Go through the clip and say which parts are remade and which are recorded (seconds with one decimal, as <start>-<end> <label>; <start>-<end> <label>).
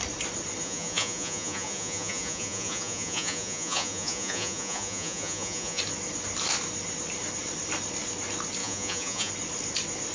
0.0-0.6 recorded; 0.6-5.8 remade; 5.8-8.6 recorded; 8.6-9.3 remade; 9.3-10.1 recorded